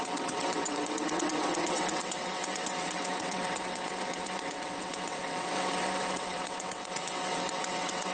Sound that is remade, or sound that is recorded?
remade